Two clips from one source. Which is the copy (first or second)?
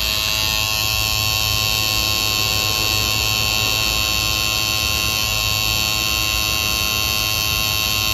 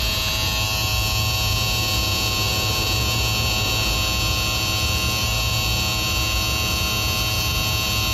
second